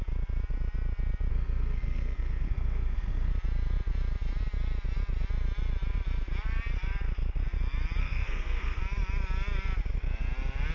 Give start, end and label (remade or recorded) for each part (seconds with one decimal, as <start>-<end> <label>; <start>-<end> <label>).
0.0-1.3 recorded; 1.3-3.3 remade; 3.3-8.0 recorded; 8.0-8.8 remade; 8.8-10.7 recorded